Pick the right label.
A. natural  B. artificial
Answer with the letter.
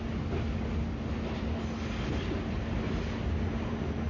A